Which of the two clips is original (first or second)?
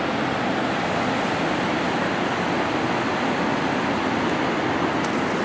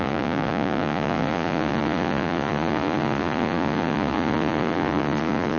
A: first